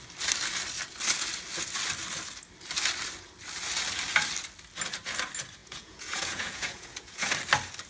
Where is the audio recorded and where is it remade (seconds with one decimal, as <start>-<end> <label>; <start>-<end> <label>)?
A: 0.0-5.6 recorded; 5.6-7.3 remade; 7.3-7.9 recorded